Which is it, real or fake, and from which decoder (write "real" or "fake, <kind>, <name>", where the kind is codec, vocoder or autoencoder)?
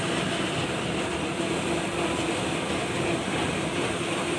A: real